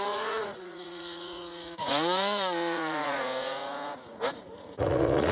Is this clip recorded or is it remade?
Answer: remade